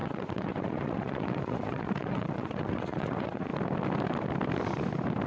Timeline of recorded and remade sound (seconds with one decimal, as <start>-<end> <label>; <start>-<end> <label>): 0.0-3.5 remade; 3.5-5.3 recorded